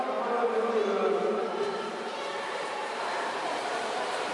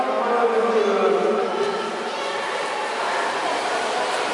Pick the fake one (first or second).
first